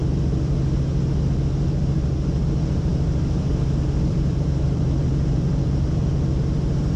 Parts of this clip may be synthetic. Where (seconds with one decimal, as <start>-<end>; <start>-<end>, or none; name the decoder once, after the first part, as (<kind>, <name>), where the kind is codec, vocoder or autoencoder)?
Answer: 2.9-6.0 (vocoder, BigVGAN v2)